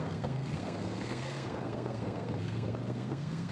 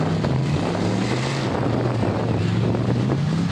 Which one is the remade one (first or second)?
first